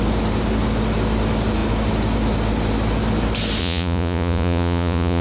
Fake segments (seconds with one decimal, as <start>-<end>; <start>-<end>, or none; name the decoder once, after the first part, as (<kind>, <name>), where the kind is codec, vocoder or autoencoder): 3.6-5.2 (vocoder, Vocos)